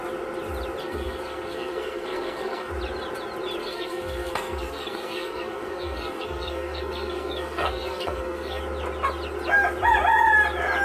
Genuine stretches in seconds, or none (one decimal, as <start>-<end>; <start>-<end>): 0.0-0.8; 2.7-3.6; 8.6-10.8